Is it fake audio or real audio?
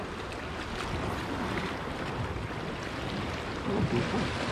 real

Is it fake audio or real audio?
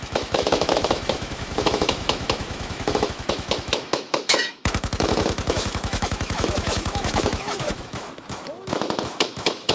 fake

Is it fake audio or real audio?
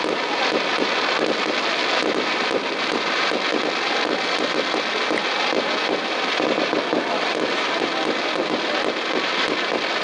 real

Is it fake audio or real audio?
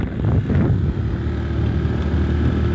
real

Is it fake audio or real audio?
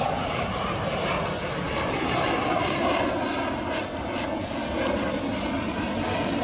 real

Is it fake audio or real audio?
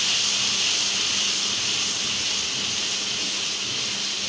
real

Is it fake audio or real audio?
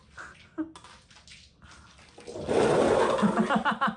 real